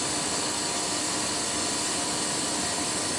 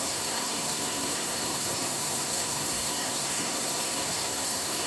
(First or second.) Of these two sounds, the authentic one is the first